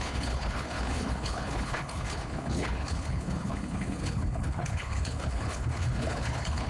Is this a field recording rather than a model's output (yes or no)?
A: no